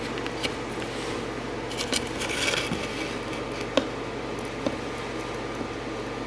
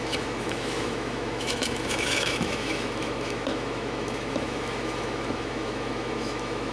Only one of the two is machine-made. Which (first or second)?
second